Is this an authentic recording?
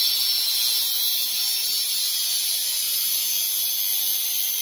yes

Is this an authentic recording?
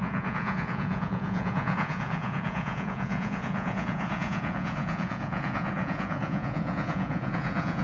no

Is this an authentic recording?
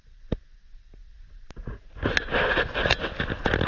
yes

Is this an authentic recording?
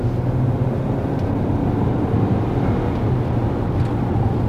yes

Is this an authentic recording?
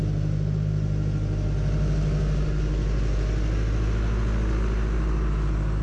yes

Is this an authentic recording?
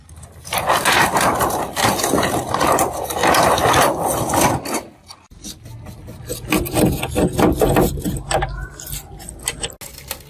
yes